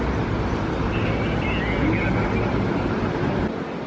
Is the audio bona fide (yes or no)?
yes